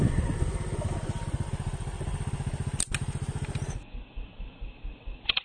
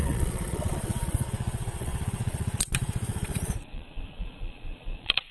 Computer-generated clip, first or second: second